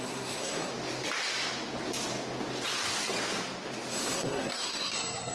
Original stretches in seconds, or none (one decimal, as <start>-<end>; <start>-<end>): 0.7-3.9